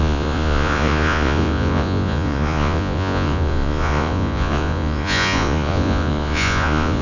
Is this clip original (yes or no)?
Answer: no